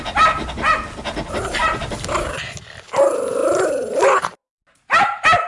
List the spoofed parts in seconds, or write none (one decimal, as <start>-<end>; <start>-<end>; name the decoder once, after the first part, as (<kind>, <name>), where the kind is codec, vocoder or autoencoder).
none